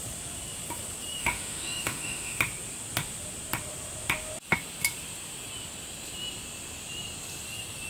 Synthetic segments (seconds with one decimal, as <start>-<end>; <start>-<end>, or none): 1.2-2.4

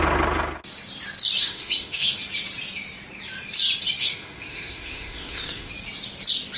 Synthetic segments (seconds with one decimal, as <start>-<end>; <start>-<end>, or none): 1.4-2.2; 4.0-5.7

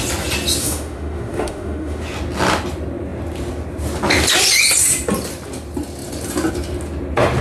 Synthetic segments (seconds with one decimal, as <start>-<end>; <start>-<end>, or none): 0.6-2.0